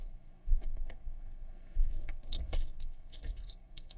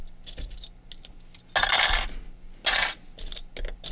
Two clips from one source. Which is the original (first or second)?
second